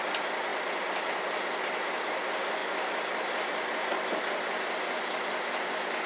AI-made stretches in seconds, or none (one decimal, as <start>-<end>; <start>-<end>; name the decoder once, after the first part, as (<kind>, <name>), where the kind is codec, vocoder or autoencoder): none